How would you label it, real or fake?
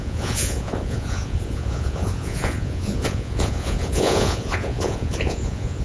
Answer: fake